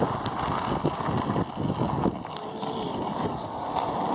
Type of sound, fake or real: real